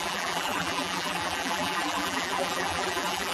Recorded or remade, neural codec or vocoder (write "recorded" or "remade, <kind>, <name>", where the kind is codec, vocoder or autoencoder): remade, vocoder, BigVGAN v2